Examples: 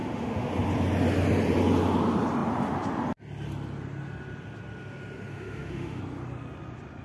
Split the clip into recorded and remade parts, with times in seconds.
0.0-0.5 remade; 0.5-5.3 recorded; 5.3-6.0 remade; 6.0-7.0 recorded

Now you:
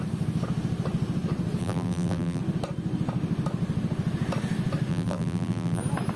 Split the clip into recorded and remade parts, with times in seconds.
0.0-1.6 recorded; 1.6-2.4 remade; 2.4-4.9 recorded; 4.9-5.8 remade; 5.8-6.2 recorded

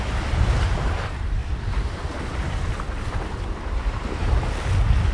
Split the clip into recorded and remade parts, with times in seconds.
0.0-1.4 recorded; 1.4-4.5 remade; 4.5-5.1 recorded

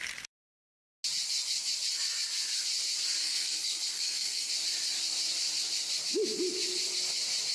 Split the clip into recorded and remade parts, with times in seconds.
0.0-3.2 recorded; 3.2-4.5 remade; 4.5-7.5 recorded

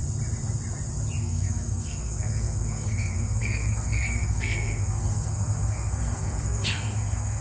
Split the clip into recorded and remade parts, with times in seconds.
0.0-1.2 recorded; 1.2-7.4 remade